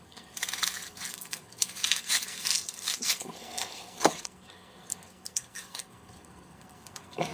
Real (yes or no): no